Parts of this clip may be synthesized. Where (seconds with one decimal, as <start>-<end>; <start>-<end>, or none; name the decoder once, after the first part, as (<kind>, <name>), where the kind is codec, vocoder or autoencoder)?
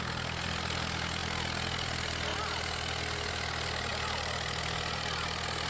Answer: none